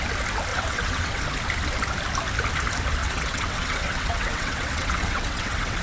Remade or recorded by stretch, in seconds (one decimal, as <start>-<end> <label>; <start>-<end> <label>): 0.0-0.5 recorded; 0.5-1.2 remade; 1.2-3.0 recorded; 3.0-5.8 remade